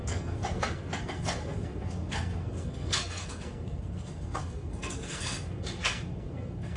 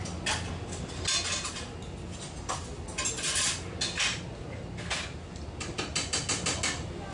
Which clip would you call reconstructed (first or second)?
first